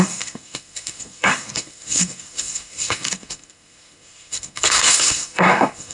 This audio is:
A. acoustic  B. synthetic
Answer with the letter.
B